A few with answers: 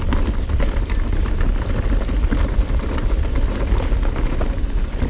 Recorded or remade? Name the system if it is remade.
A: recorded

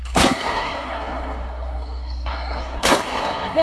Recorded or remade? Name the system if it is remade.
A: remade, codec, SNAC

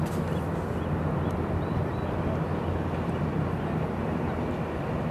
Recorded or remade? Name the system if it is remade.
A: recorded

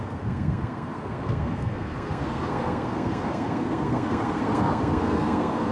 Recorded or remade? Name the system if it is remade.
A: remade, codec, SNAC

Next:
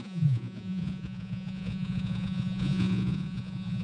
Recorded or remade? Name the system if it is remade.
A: remade, vocoder, Vocos